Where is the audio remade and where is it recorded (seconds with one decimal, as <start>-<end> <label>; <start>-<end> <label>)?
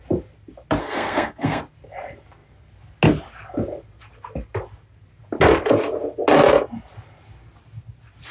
0.0-0.8 recorded; 0.8-1.6 remade; 1.6-8.3 recorded